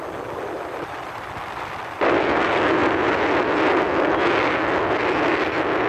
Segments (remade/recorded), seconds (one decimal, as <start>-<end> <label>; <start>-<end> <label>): 0.0-5.9 recorded